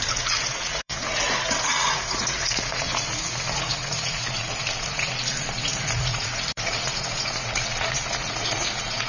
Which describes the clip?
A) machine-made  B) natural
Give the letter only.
A